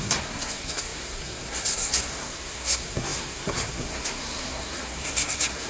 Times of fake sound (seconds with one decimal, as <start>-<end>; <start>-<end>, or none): 0.0-5.7